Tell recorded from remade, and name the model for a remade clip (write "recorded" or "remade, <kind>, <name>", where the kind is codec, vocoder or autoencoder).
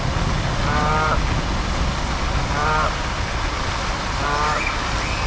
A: recorded